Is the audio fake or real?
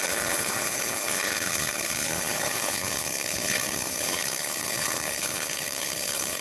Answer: fake